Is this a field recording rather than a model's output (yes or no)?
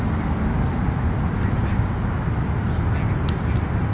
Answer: yes